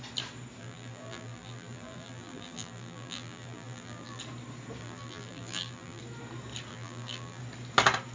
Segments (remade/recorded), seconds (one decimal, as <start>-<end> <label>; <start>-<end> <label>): 0.0-0.6 recorded; 0.6-4.2 remade; 4.2-4.8 recorded; 4.8-6.0 remade; 6.0-6.7 recorded; 6.7-7.4 remade; 7.4-8.1 recorded